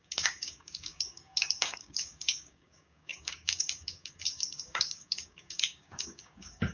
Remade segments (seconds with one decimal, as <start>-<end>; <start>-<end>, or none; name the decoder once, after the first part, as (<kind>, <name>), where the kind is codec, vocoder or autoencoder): 0.0-6.7 (codec, DAC)